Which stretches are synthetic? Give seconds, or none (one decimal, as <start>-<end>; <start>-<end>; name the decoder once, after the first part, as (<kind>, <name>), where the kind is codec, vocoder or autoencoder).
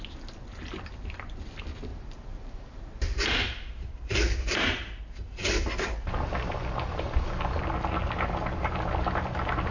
1.9-5.0 (vocoder, BigVGAN v2)